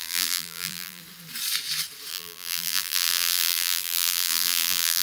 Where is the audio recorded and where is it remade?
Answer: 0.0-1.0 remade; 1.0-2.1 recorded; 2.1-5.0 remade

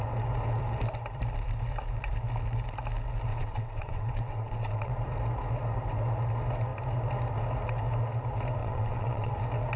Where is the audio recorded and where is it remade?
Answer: 0.0-3.3 recorded; 3.3-4.9 remade; 4.9-8.6 recorded; 8.6-9.3 remade; 9.3-9.8 recorded

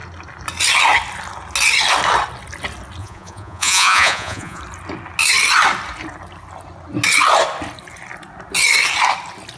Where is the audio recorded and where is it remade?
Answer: 0.0-3.0 recorded; 3.0-4.6 remade; 4.6-9.6 recorded

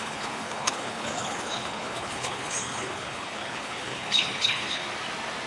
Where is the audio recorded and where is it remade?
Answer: 0.0-4.8 remade; 4.8-5.5 recorded

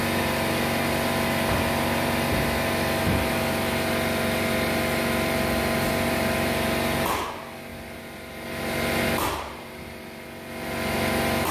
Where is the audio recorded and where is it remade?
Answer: 0.0-11.5 recorded

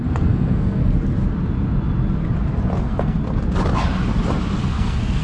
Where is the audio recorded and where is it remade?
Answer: 0.0-0.8 remade; 0.8-2.8 recorded; 2.8-3.2 remade; 3.2-4.6 recorded; 4.6-5.2 remade

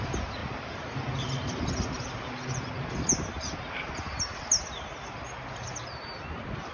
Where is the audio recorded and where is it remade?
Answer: 0.0-6.7 recorded